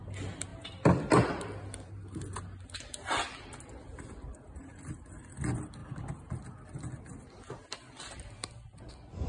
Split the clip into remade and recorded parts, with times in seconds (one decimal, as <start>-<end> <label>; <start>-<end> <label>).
0.0-9.3 recorded